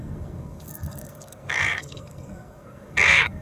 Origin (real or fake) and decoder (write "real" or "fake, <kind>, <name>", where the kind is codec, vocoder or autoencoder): fake, codec, SNAC